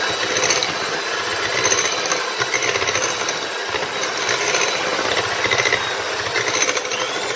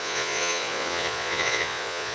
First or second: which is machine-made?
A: second